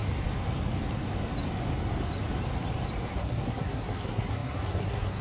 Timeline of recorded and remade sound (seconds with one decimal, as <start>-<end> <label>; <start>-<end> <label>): 0.0-3.1 recorded; 3.1-5.2 remade